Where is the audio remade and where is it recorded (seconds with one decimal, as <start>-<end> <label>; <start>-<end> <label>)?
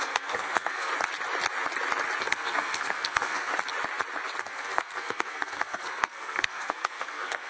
0.0-0.9 remade; 0.9-2.2 recorded; 2.2-3.5 remade; 3.5-4.4 recorded; 4.4-7.5 remade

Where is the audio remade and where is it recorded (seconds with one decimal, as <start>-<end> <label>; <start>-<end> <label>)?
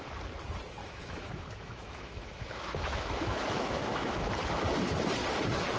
0.0-0.8 recorded; 0.8-4.3 remade; 4.3-5.8 recorded